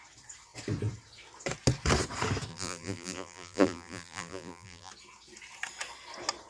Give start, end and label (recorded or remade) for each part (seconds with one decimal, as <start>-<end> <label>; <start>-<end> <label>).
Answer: 0.0-2.5 recorded; 2.5-4.9 remade; 4.9-6.5 recorded